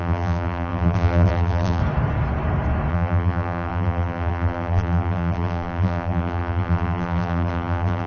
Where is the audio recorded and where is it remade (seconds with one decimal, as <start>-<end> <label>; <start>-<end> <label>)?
0.0-1.8 remade; 1.8-2.9 recorded; 2.9-8.1 remade